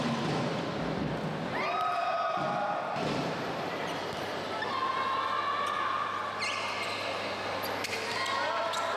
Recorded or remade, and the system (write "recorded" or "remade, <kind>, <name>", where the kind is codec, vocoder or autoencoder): recorded